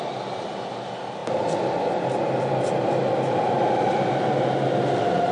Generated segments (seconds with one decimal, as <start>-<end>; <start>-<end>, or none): none